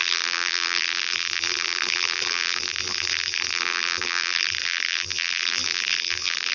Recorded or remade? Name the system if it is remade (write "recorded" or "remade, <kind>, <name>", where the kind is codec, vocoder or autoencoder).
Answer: remade, vocoder, BigVGAN v2